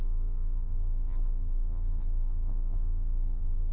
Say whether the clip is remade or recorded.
remade